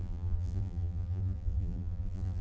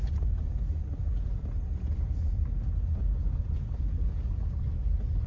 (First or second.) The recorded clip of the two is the second